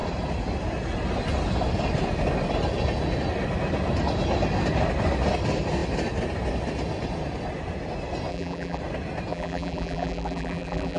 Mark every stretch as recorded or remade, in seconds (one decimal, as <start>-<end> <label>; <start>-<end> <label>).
0.0-8.3 recorded; 8.3-8.8 remade; 8.8-9.3 recorded; 9.3-11.0 remade